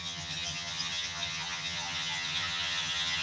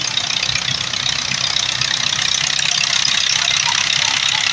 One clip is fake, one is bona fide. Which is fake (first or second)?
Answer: first